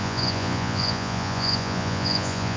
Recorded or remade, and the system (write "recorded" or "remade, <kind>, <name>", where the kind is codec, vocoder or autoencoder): remade, vocoder, Vocos